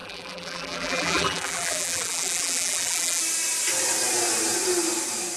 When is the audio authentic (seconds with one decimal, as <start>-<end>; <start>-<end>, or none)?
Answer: 3.2-5.4